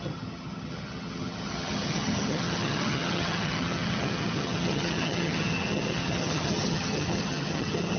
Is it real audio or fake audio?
fake